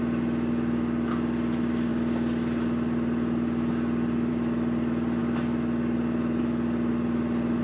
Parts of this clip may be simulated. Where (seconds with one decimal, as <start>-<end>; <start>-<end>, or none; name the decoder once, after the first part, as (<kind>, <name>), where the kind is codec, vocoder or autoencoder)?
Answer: none